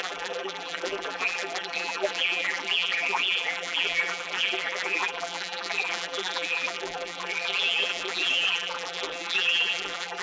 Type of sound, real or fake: fake